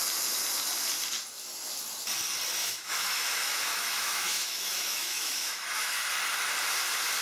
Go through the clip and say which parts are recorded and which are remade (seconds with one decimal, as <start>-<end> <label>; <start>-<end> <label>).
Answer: 0.0-2.6 recorded; 2.6-6.1 remade; 6.1-7.2 recorded